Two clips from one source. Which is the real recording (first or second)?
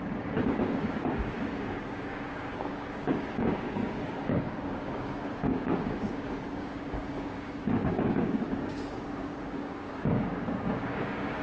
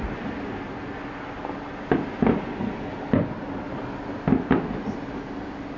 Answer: second